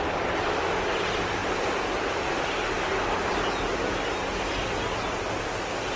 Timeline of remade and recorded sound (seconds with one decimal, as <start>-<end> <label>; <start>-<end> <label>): 0.0-1.4 recorded; 1.4-2.5 remade; 2.5-6.0 recorded